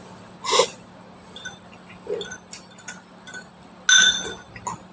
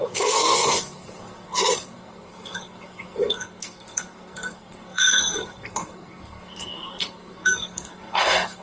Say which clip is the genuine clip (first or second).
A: first